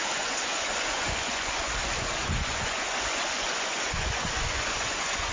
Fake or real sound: fake